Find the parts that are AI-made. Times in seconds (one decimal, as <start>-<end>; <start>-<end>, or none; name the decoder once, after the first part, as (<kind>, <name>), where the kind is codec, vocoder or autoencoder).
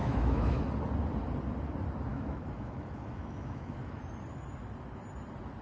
0.0-0.6 (autoencoder, DAC-VAE); 2.1-4.0